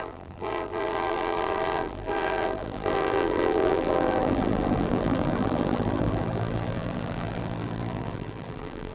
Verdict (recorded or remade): remade